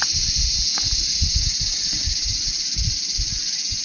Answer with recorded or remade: recorded